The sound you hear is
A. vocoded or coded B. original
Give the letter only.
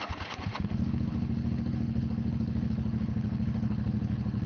A